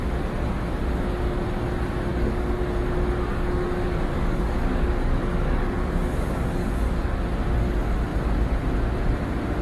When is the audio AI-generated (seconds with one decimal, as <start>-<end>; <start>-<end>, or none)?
2.1-2.6; 3.3-7.2